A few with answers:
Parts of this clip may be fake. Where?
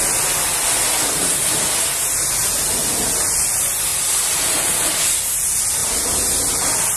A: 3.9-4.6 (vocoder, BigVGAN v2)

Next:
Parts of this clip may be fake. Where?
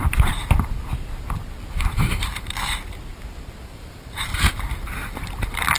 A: 1.9-2.6 (vocoder, BigVGAN v2); 3.6-5.8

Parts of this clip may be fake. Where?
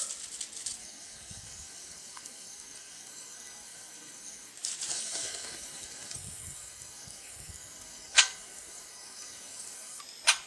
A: 0.8-4.5 (codec, SNAC); 4.9-10.0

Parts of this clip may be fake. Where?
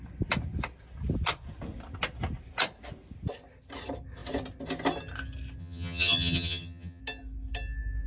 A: 5.6-7.0 (vocoder, HiFi-GAN)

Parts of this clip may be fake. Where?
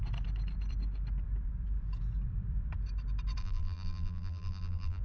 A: 3.4-5.0 (vocoder, BigVGAN v2)